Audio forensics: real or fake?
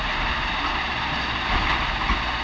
real